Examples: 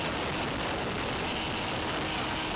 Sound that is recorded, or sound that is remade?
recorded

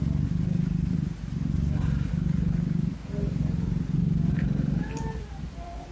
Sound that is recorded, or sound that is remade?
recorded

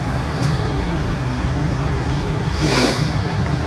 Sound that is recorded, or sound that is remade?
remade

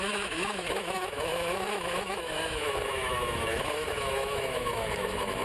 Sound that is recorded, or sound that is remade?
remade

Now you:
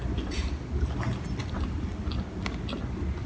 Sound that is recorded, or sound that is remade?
recorded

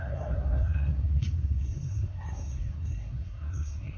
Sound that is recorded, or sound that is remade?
remade